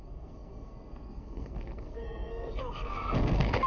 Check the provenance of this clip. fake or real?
fake